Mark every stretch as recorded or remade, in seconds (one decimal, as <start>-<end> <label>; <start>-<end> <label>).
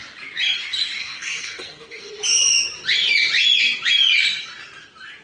0.0-1.0 recorded; 1.0-2.1 remade; 2.1-5.2 recorded